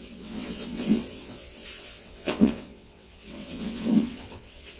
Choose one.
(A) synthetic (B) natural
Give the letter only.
A